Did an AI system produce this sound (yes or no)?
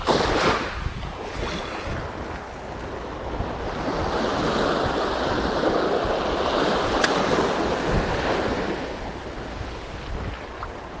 no